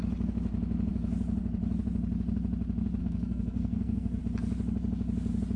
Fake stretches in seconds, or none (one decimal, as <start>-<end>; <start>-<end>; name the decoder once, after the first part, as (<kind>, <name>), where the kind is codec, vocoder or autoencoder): 3.0-4.2 (codec, SNAC)